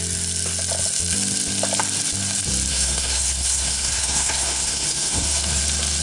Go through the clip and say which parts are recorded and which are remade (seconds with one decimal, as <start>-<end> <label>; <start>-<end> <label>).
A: 0.0-2.7 recorded; 2.7-5.6 remade; 5.6-6.0 recorded